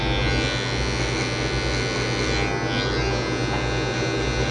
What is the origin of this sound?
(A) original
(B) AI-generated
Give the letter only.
A